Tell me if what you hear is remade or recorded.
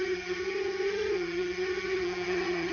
remade